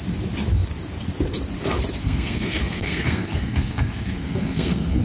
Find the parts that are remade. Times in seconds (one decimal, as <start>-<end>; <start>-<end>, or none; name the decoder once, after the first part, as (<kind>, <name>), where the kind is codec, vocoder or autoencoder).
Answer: 2.0-5.0 (codec, SNAC)